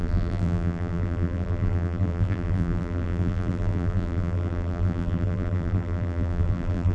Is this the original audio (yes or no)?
no